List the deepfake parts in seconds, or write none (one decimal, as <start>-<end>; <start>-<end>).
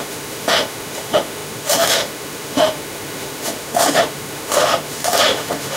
0.0-5.8